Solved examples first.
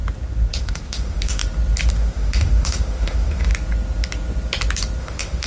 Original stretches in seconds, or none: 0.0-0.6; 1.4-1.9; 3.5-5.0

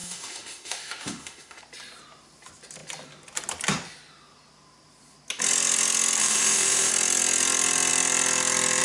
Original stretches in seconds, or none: 1.6-6.2; 6.9-8.8

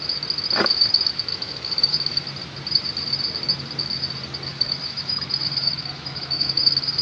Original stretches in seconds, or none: 0.0-1.3; 2.2-4.5

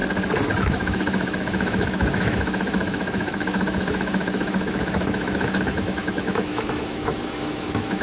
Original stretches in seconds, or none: 0.0-0.6

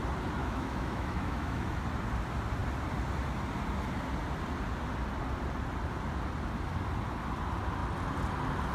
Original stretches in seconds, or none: 0.0-0.4; 1.8-8.7

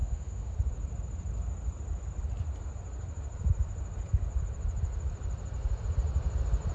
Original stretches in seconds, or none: 0.5-6.7